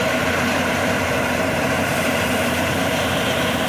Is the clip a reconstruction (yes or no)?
yes